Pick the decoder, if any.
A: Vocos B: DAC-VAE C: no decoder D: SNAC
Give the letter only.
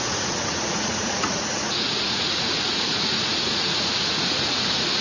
A